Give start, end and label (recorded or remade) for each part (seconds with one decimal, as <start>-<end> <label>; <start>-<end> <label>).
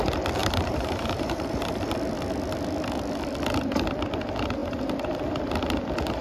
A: 0.0-0.4 recorded; 0.4-1.9 remade; 1.9-6.2 recorded